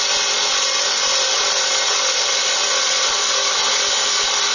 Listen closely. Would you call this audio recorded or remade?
recorded